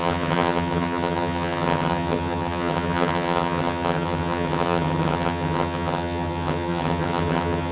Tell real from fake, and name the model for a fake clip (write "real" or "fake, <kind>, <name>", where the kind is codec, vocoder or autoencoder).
fake, vocoder, HiFi-GAN